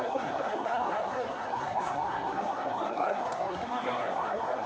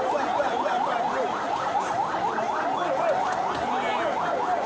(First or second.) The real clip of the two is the second